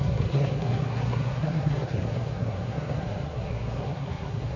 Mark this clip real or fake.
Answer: fake